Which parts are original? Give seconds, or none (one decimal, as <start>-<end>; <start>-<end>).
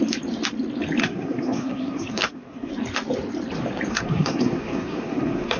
0.0-1.0; 2.7-3.9